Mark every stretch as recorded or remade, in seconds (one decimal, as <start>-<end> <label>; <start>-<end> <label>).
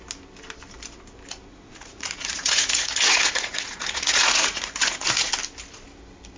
0.0-1.5 recorded; 1.5-5.3 remade; 5.3-6.4 recorded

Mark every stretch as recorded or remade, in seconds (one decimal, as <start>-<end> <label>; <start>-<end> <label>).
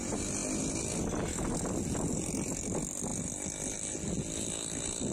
0.0-5.1 recorded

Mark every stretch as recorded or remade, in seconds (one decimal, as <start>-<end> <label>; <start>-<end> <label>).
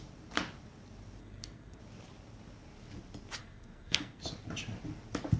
0.0-1.2 recorded; 1.2-1.8 remade; 1.8-3.4 recorded; 3.4-4.2 remade; 4.2-5.4 recorded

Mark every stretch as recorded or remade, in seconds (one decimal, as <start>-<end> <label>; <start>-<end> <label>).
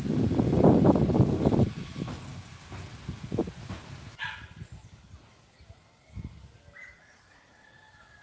0.0-8.2 recorded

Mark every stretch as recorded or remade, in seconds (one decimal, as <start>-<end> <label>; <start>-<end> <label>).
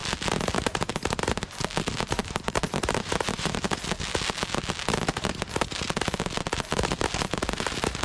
0.0-2.2 recorded; 2.2-3.6 remade; 3.6-8.0 recorded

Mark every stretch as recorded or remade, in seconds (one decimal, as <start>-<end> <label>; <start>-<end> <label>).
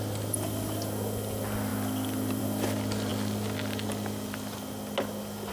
0.0-5.5 recorded